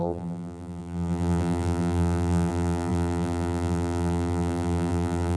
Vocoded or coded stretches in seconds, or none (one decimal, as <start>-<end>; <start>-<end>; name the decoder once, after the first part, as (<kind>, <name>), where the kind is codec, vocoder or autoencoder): 0.0-5.4 (vocoder, BigVGAN v2)